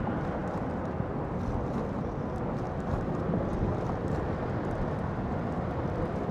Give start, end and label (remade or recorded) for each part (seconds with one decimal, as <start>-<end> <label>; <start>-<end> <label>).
0.0-6.3 recorded